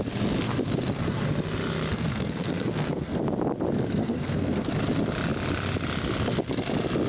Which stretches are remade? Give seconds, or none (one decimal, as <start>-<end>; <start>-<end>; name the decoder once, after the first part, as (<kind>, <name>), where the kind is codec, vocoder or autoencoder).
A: 1.9-3.2 (codec, SNAC); 4.0-4.7